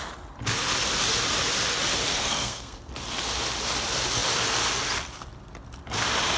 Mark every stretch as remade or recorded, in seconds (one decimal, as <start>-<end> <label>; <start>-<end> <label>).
0.0-2.1 recorded; 2.1-2.9 remade; 2.9-6.4 recorded